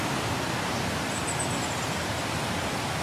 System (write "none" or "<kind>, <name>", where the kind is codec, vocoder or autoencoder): none